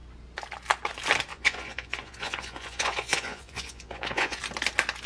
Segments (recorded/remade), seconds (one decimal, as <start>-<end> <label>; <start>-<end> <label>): 0.0-1.3 recorded; 1.3-4.4 remade; 4.4-5.1 recorded